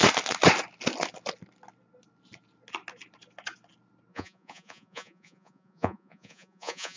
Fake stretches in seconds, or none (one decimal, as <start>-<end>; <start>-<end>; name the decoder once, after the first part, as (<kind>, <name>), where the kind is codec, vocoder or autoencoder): 4.1-7.0 (vocoder, Vocos)